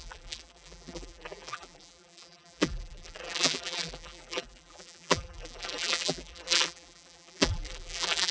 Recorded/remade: remade